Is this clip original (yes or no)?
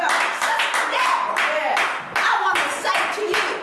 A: yes